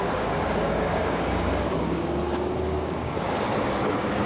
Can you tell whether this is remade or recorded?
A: remade